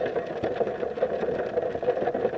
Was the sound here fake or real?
real